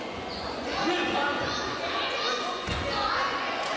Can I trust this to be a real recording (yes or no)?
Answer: no